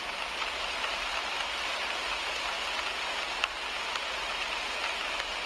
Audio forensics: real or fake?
real